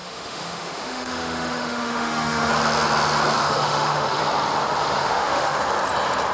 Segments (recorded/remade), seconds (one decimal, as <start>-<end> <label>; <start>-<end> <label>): 0.0-2.5 remade; 2.5-3.4 recorded; 3.4-4.2 remade; 4.2-5.0 recorded; 5.0-5.6 remade; 5.6-6.3 recorded

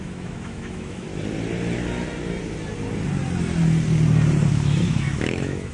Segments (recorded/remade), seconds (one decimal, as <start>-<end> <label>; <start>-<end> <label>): 0.0-1.1 remade; 1.1-4.5 recorded; 4.5-5.7 remade

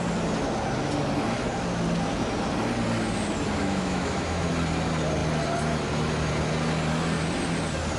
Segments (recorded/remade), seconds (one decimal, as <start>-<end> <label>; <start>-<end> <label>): 0.0-3.6 recorded; 3.6-4.5 remade; 4.5-8.0 recorded